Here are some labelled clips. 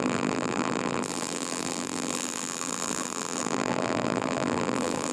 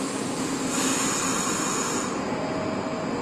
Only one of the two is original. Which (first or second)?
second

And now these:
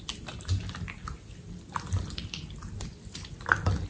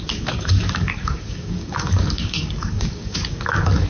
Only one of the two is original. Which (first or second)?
first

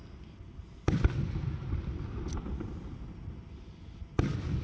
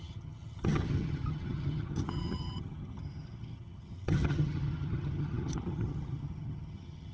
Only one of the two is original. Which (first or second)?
first